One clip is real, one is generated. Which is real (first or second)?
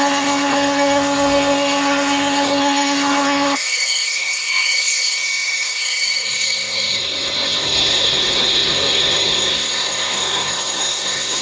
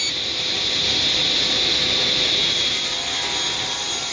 second